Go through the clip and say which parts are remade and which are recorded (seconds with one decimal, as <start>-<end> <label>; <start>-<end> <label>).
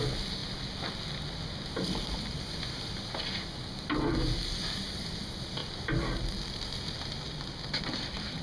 0.0-8.4 recorded